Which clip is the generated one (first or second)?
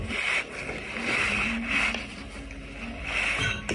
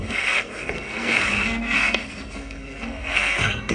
second